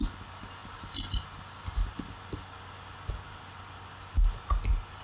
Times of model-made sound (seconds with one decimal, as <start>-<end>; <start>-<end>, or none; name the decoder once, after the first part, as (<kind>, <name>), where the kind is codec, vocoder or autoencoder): none